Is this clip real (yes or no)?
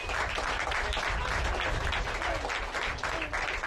yes